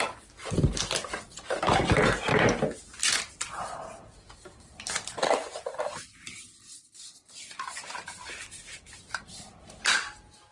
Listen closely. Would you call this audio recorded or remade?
recorded